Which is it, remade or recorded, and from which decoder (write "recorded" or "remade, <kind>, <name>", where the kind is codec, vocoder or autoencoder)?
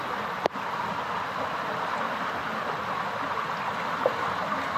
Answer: recorded